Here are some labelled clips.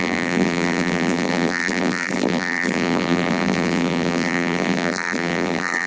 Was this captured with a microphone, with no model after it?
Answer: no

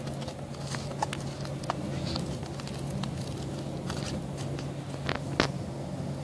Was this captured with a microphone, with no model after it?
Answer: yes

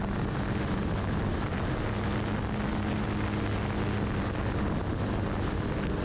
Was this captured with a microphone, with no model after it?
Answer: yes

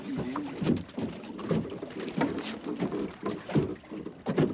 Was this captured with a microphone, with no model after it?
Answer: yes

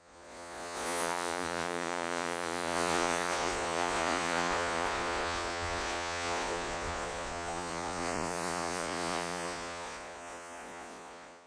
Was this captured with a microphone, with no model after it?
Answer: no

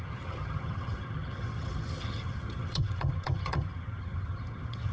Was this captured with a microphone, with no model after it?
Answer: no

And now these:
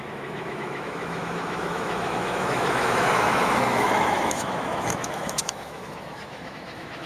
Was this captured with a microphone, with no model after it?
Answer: no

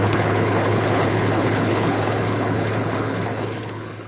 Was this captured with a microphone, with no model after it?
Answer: no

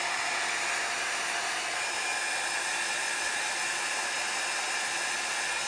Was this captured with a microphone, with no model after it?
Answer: yes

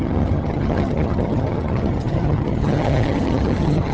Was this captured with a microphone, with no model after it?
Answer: no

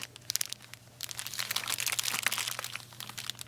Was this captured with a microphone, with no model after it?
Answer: yes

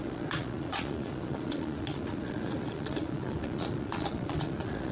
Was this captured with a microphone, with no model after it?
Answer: no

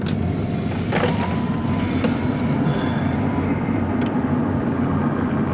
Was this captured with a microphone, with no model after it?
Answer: yes